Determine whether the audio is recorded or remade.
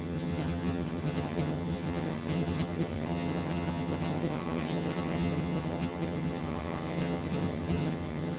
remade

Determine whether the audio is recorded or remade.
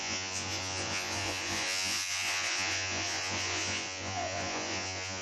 remade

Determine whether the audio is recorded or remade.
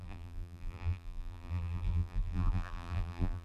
remade